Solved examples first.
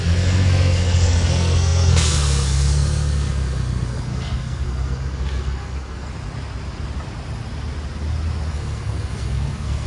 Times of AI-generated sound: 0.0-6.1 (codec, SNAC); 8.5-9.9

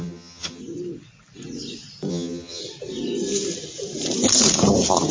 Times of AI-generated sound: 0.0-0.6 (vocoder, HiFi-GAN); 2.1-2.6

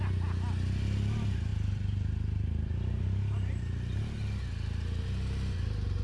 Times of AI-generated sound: 1.5-2.7 (vocoder, BigVGAN v2)

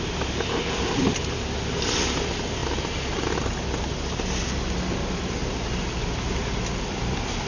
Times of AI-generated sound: none

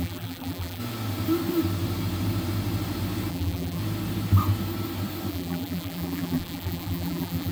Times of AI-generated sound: 0.0-0.8 (vocoder, BigVGAN v2); 3.3-3.8; 5.3-7.5

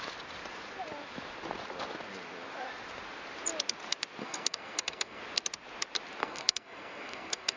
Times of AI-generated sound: 4.2-5.2 (codec, SNAC); 6.2-7.6